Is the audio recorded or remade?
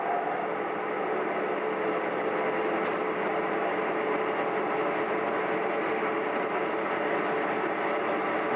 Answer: recorded